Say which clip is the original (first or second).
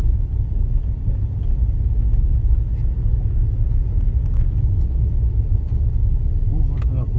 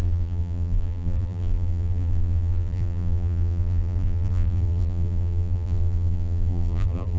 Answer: first